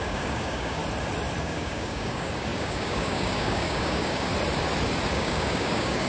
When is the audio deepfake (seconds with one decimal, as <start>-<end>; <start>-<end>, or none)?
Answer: 0.0-0.8; 1.4-4.3; 5.1-6.1